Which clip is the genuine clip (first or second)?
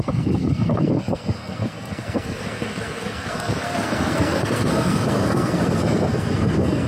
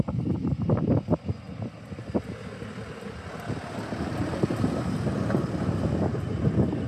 second